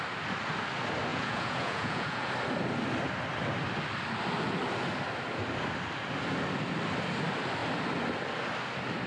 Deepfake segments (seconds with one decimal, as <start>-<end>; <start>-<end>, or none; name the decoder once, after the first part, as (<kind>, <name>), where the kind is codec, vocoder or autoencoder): 1.1-2.3 (vocoder, Vocos)